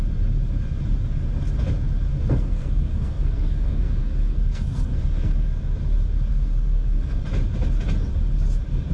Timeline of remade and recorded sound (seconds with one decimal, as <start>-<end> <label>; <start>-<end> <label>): 0.0-2.1 recorded; 2.1-5.8 remade; 5.8-6.3 recorded; 6.3-7.2 remade; 7.2-8.9 recorded